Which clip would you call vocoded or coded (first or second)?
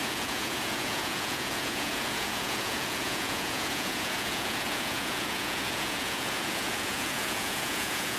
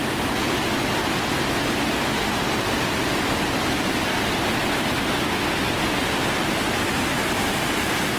first